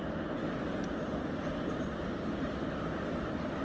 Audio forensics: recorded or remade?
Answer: recorded